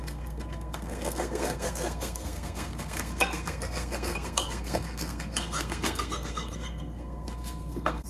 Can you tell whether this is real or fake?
fake